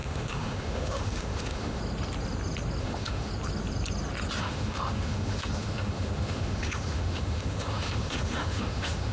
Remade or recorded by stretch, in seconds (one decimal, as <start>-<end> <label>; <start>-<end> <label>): 0.0-1.8 remade; 1.8-2.8 recorded; 2.8-3.3 remade; 3.3-4.4 recorded; 4.4-9.1 remade